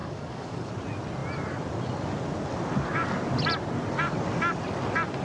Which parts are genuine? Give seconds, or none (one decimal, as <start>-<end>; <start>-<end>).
0.7-5.2